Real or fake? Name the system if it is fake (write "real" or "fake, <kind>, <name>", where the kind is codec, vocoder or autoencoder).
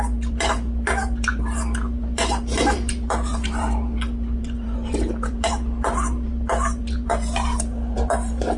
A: fake, vocoder, BigVGAN v2